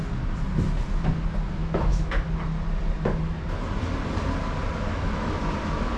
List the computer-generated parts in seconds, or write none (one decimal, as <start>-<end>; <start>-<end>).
1.6-2.3; 4.9-5.4